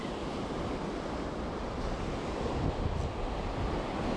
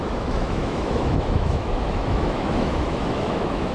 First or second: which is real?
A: first